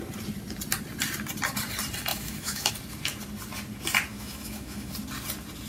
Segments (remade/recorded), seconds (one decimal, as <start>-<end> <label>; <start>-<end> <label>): 0.0-2.1 recorded; 2.1-2.7 remade; 2.7-4.1 recorded; 4.1-4.9 remade; 4.9-5.7 recorded